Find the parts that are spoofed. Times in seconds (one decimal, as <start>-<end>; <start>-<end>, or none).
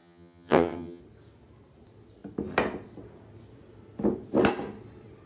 0.0-1.0